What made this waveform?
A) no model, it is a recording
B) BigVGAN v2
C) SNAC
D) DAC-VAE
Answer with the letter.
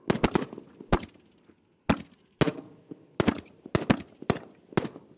A